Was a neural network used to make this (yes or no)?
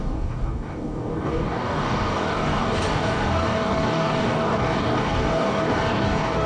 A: yes